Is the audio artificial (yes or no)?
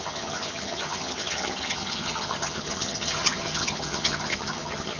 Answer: yes